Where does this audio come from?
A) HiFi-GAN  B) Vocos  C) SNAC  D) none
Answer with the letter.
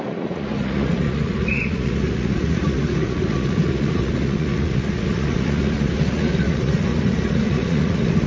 B